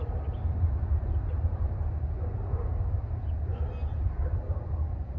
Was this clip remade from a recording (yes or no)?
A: no